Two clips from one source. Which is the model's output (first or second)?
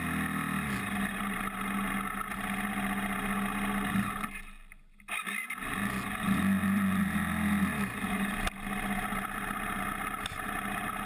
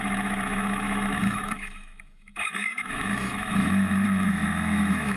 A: second